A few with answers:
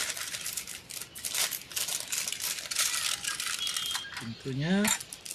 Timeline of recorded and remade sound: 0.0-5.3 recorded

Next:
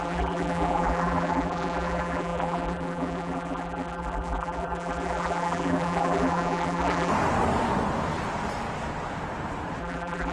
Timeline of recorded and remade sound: 0.0-7.1 remade; 7.1-9.8 recorded; 9.8-10.3 remade

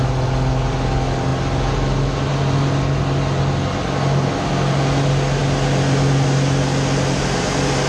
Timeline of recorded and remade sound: 0.0-7.9 recorded